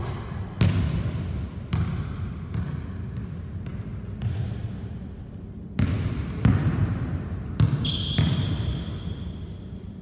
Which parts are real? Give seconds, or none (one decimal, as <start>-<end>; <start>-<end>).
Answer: 0.0-10.0